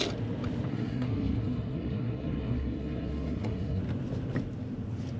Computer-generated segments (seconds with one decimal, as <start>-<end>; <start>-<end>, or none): 0.7-3.8